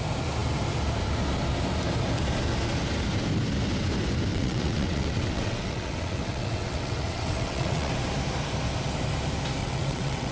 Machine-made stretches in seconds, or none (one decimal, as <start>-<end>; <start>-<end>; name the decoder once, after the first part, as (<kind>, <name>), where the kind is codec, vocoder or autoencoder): 4.3-7.9 (vocoder, WaveNeXt); 9.6-10.3